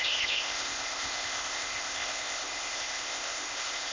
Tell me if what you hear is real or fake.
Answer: fake